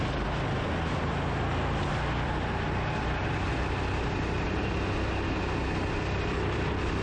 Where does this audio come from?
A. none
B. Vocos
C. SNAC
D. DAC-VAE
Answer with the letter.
A